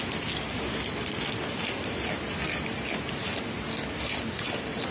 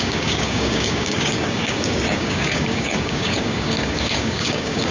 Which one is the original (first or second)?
first